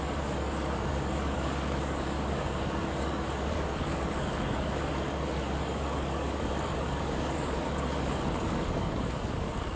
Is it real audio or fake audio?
fake